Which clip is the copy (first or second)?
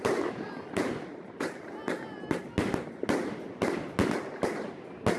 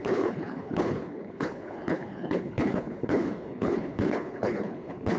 second